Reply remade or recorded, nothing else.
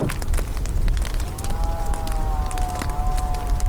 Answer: recorded